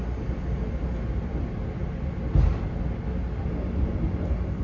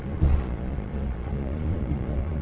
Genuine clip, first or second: first